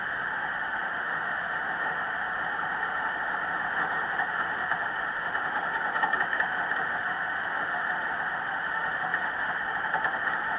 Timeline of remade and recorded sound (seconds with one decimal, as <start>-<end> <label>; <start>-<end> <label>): 0.0-10.6 remade